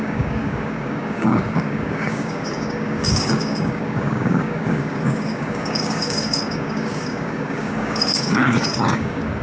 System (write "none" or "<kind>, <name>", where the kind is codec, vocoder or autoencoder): codec, DAC